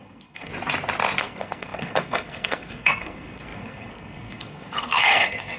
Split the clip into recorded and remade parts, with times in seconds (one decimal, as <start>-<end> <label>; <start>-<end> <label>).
0.0-0.5 remade; 0.5-1.2 recorded; 1.2-5.6 remade